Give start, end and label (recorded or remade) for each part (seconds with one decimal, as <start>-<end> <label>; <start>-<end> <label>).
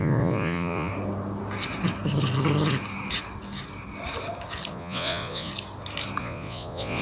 0.0-0.9 remade; 0.9-4.7 recorded; 4.7-5.5 remade; 5.5-6.2 recorded; 6.2-7.0 remade